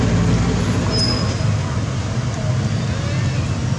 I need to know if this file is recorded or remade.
recorded